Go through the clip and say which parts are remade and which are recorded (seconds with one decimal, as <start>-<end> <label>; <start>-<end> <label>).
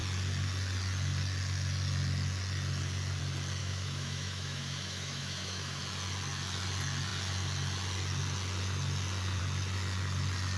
0.0-3.6 recorded; 3.6-5.8 remade; 5.8-10.6 recorded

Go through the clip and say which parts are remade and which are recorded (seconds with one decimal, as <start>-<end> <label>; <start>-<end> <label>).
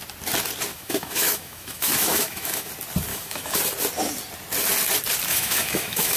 0.0-0.7 recorded; 0.7-2.7 remade; 2.7-3.1 recorded; 3.1-3.6 remade; 3.6-5.3 recorded; 5.3-6.2 remade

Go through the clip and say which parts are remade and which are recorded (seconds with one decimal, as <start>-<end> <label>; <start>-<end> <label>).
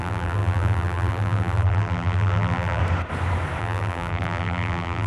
0.0-2.8 remade; 2.8-3.6 recorded; 3.6-5.1 remade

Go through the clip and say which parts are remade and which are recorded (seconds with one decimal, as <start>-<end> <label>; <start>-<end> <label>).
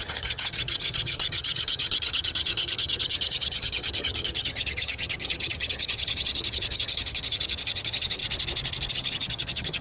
0.0-8.2 remade; 8.2-8.9 recorded; 8.9-9.8 remade